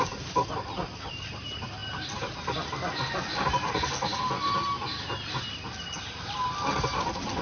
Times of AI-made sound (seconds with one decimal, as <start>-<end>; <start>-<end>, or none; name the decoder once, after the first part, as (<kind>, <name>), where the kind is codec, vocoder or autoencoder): none

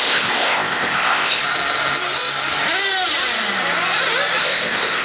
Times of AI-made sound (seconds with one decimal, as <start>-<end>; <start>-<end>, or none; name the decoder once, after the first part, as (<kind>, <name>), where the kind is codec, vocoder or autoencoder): 0.0-1.4 (codec, ZipCodec); 4.4-5.0